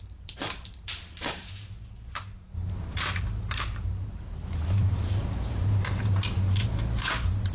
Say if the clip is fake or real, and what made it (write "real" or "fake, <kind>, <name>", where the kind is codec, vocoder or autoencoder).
fake, vocoder, BigVGAN v2